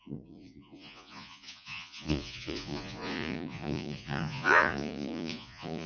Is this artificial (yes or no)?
yes